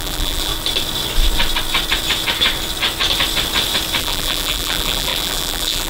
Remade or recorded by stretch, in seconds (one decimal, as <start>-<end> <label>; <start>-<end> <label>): 0.0-0.5 remade; 0.5-4.0 recorded; 4.0-5.9 remade